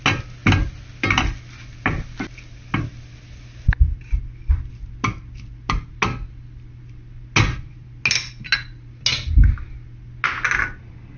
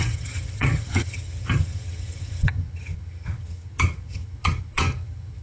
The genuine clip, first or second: first